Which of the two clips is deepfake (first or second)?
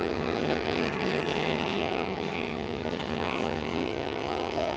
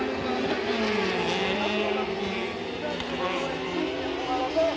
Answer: first